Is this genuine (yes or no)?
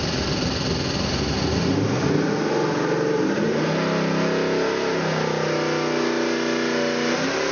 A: yes